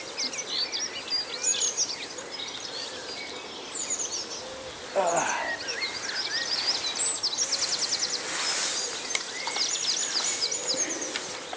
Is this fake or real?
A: real